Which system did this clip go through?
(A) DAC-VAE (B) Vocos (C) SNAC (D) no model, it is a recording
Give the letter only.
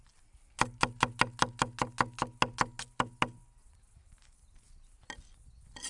D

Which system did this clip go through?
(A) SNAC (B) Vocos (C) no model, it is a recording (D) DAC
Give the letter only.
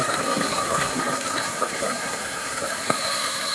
A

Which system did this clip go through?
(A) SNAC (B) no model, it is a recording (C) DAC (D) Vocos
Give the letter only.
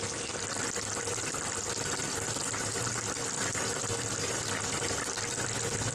B